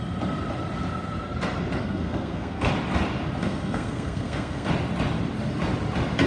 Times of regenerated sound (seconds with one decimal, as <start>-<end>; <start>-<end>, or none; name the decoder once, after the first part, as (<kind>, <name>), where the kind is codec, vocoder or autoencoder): 1.8-2.7 (codec, SNAC); 3.4-4.7